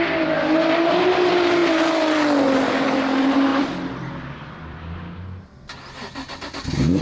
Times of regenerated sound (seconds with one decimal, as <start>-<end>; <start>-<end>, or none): 3.5-4.8